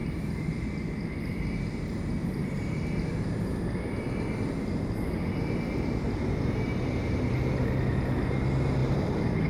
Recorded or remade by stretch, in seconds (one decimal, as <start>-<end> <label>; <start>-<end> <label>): 0.0-1.6 remade; 1.6-2.2 recorded; 2.2-2.8 remade; 2.8-8.8 recorded; 8.8-9.5 remade